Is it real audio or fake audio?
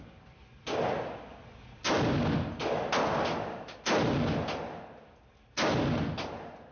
real